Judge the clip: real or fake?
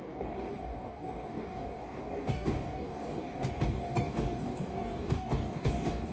fake